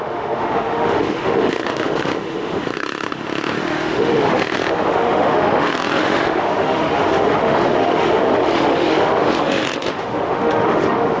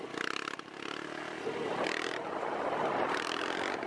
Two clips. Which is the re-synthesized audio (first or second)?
first